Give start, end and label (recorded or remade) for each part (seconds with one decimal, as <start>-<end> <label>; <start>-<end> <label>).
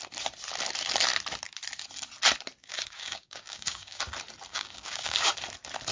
0.0-2.6 recorded; 2.6-4.0 remade; 4.0-4.5 recorded; 4.5-5.3 remade; 5.3-5.9 recorded